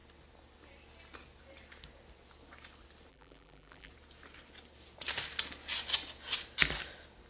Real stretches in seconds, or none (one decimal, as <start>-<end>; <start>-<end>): 0.0-3.1; 3.9-7.3